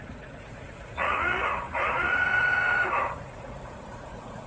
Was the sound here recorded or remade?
remade